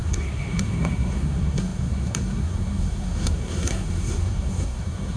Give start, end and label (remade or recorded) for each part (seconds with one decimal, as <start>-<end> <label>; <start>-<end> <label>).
0.0-5.2 remade